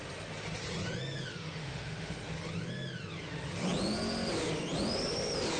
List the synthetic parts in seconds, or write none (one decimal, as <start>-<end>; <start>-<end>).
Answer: 1.3-2.1